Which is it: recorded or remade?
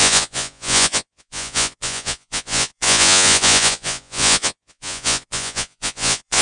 remade